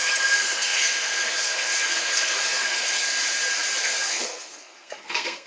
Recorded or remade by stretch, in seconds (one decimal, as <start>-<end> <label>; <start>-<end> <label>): 0.0-3.2 remade; 3.2-3.8 recorded; 3.8-5.5 remade